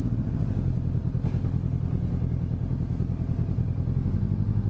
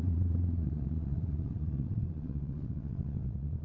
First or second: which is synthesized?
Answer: second